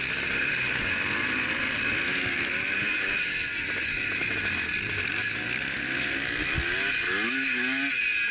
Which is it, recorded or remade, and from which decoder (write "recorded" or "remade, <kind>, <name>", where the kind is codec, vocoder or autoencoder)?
recorded